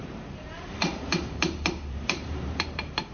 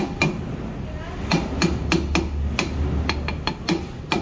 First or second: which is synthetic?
first